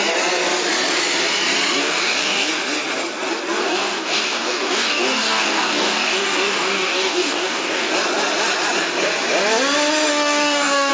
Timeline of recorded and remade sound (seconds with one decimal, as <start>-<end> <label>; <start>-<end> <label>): 0.0-1.8 recorded; 1.8-2.5 remade; 2.5-3.6 recorded; 3.6-7.9 remade; 7.9-10.1 recorded; 10.1-10.9 remade